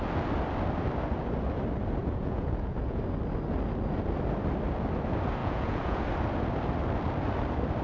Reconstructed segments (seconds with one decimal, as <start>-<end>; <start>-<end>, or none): 2.0-3.0; 5.4-6.0